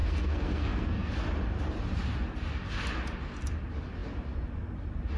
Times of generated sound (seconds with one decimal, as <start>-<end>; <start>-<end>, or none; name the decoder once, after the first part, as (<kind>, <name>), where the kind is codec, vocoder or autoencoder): 0.0-1.1 (codec, SNAC)